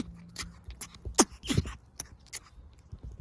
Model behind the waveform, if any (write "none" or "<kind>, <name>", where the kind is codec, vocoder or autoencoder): none